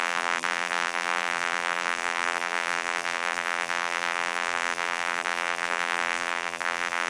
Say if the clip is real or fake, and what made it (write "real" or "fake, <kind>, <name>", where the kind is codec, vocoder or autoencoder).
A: fake, vocoder, BigVGAN v2